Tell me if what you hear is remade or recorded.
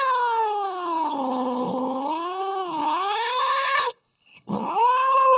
remade